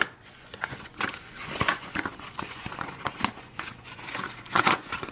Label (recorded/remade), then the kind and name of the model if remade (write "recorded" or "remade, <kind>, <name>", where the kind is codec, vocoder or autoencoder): remade, vocoder, Vocos